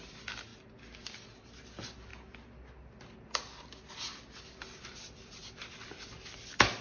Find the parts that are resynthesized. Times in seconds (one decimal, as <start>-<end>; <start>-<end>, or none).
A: none